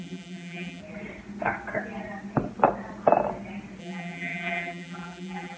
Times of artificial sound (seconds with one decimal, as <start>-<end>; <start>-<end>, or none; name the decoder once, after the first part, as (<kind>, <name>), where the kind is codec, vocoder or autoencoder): 0.0-0.8 (vocoder, BigVGAN v2); 3.8-5.6